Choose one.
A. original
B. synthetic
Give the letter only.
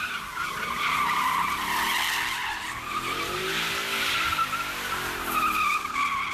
A